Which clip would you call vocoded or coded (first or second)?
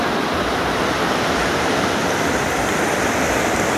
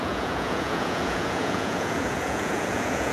second